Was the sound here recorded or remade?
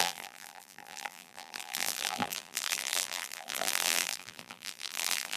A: remade